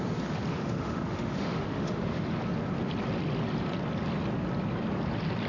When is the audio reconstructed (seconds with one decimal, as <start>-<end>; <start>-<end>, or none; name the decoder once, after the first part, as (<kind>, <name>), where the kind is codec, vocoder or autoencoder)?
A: 0.5-2.2 (autoencoder, DAC-VAE)